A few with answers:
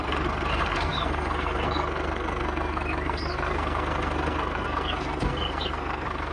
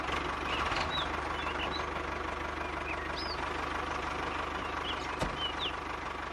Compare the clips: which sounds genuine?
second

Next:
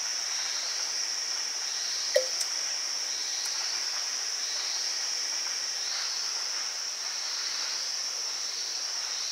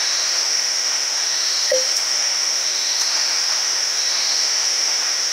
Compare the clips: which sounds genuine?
first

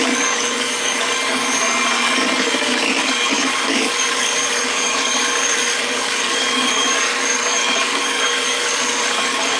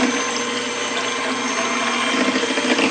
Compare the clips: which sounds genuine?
second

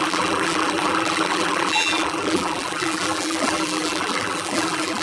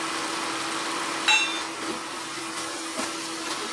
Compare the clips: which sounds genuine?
second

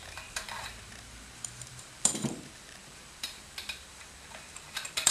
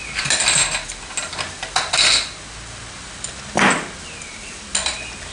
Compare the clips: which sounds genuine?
second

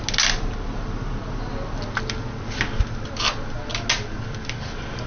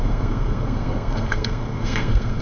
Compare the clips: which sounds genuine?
first